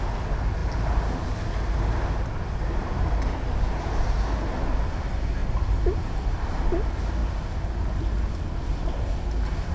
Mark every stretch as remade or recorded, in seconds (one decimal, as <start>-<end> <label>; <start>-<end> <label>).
0.0-5.4 recorded; 5.4-6.6 remade; 6.6-9.7 recorded